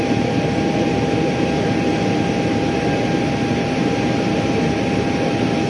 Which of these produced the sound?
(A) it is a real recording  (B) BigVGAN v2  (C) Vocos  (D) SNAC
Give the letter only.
A